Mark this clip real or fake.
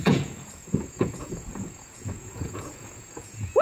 fake